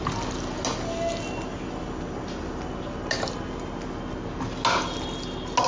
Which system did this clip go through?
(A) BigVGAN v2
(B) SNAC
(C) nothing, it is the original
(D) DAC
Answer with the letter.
C